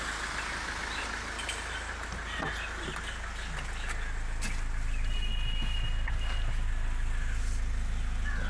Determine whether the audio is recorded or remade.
recorded